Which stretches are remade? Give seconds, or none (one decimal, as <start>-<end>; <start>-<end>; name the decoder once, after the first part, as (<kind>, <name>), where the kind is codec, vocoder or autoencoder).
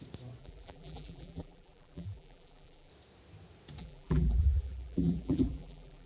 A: 0.4-2.9 (vocoder, BigVGAN v2); 3.8-6.1